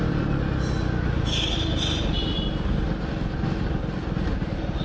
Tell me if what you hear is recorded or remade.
recorded